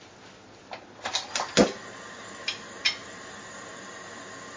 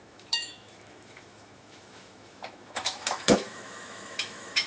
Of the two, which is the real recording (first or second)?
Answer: first